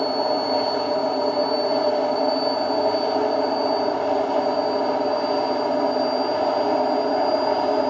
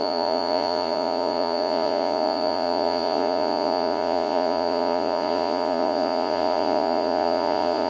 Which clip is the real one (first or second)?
first